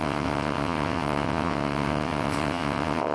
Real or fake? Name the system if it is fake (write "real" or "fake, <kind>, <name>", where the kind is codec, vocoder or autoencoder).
fake, vocoder, WaveNeXt